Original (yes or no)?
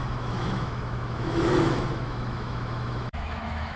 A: no